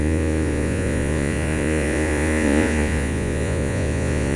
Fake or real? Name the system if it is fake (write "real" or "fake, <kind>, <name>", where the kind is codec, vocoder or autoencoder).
fake, vocoder, Vocos